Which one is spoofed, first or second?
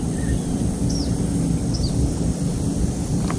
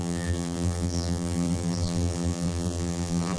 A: second